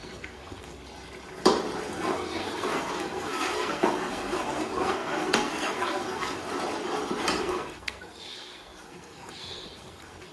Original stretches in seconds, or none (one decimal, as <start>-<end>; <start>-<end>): 0.8-1.9; 6.4-7.4